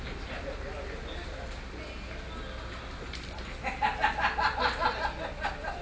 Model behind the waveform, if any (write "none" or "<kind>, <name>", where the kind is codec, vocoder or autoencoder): none